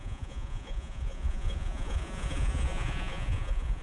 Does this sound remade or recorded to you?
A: remade